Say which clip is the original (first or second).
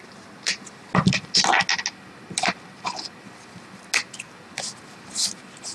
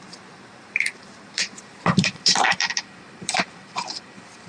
first